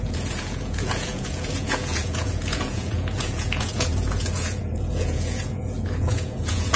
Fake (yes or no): yes